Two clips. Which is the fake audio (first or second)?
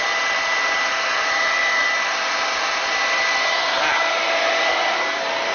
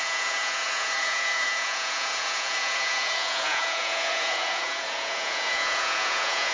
second